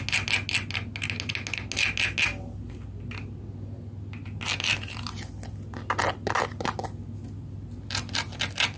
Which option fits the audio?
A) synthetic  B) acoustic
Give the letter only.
B